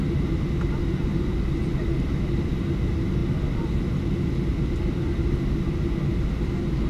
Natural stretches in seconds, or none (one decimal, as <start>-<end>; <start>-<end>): 0.0-6.9